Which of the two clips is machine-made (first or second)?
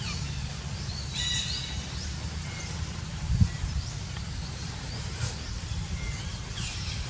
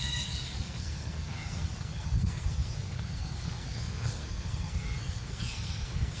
second